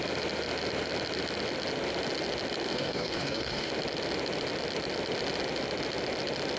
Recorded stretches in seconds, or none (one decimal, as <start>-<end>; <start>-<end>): 0.0-2.7; 3.7-6.6